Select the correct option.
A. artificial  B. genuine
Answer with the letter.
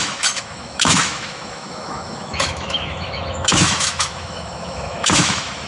A